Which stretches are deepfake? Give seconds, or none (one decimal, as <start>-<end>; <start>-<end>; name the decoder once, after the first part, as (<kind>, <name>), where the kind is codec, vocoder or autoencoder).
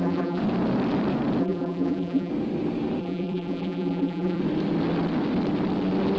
0.0-0.4 (vocoder, BigVGAN v2); 1.4-2.3; 3.0-4.4